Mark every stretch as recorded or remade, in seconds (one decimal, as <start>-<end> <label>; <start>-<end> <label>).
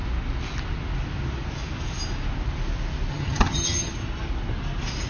0.0-3.1 recorded; 3.1-3.9 remade; 3.9-5.1 recorded